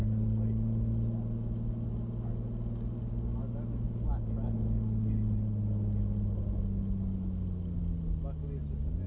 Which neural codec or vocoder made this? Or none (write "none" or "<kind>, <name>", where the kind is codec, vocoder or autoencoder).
none